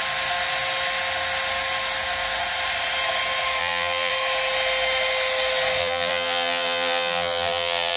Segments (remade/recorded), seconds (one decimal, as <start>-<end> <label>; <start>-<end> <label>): 0.0-3.6 recorded; 3.6-4.1 remade; 4.1-5.8 recorded; 5.8-8.0 remade